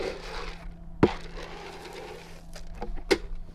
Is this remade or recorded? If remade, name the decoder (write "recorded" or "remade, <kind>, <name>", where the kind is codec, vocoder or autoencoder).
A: recorded